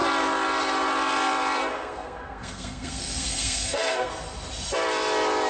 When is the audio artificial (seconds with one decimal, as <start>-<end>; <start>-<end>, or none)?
1.7-4.1